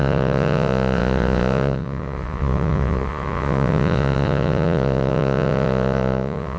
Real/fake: fake